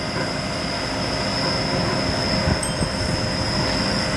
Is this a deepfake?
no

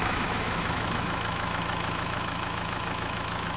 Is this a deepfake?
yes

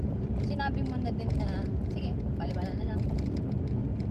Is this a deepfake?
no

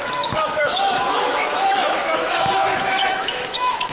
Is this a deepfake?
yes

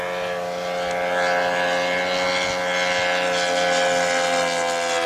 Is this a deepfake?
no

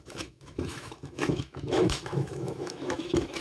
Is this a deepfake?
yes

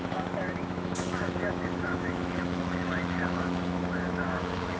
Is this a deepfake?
yes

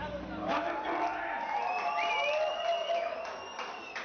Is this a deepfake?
no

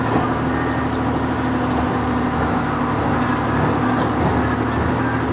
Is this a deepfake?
no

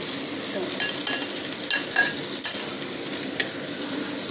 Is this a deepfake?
no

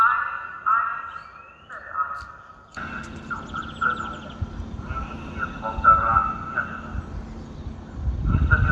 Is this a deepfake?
no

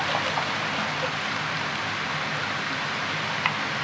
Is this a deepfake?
no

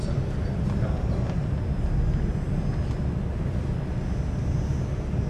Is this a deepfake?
no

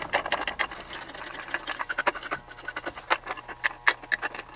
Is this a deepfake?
no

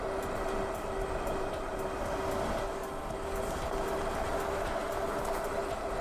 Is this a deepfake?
no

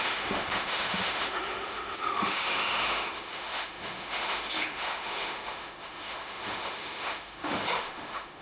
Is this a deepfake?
yes